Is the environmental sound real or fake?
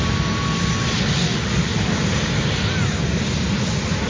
real